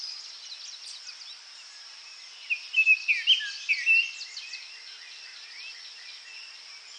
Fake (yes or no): no